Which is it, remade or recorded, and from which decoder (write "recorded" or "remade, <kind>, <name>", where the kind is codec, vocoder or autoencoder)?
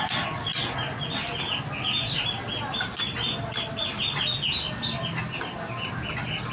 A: recorded